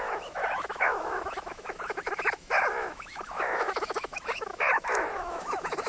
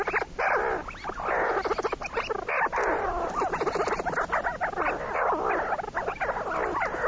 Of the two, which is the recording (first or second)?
second